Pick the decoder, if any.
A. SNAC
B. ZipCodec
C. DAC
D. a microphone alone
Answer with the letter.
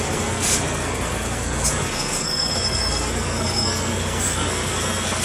A